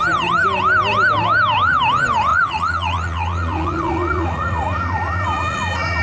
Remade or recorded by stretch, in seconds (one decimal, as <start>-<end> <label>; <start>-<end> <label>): 0.0-2.3 recorded; 2.3-6.0 remade